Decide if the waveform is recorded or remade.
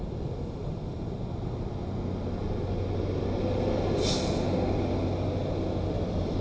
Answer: recorded